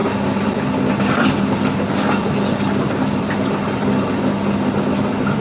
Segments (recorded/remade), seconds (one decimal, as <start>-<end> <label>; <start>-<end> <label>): 0.0-3.2 recorded; 3.2-3.8 remade; 3.8-5.0 recorded; 5.0-5.4 remade